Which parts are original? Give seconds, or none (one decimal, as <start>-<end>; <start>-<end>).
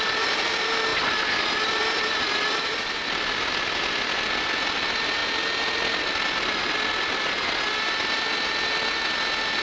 0.0-9.6